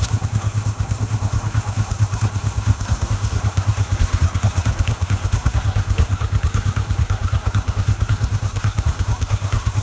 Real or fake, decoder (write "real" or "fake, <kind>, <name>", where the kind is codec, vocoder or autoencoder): fake, codec, SNAC